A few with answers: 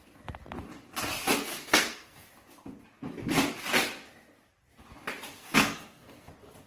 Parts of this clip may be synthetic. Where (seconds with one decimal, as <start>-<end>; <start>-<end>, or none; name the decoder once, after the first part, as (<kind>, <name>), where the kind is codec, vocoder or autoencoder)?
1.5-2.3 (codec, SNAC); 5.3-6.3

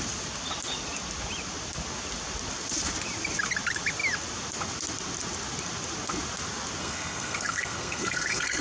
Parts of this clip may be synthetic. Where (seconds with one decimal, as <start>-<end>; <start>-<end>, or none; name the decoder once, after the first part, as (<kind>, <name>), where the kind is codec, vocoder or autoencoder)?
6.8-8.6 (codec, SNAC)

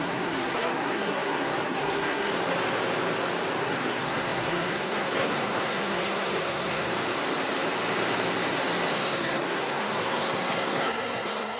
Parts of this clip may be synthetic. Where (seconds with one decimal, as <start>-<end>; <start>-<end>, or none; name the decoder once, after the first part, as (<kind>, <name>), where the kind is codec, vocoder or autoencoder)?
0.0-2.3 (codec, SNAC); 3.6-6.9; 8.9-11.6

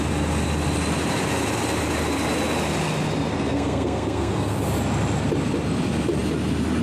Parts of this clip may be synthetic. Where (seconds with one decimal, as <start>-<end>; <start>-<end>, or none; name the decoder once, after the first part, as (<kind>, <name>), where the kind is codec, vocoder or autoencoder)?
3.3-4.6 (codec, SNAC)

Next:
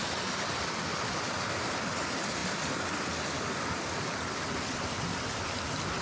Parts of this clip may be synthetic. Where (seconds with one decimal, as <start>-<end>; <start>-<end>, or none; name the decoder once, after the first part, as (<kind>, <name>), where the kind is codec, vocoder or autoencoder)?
none

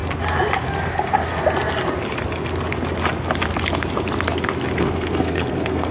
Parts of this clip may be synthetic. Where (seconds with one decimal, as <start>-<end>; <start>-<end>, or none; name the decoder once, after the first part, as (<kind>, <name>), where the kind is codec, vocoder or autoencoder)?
0.9-1.3 (codec, SNAC); 4.8-5.9